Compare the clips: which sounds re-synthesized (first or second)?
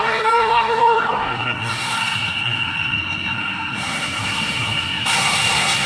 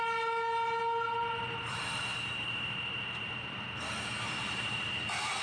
first